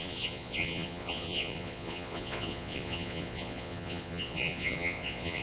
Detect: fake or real fake